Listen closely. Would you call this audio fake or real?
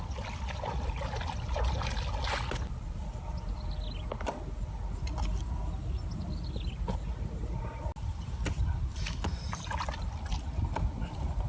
real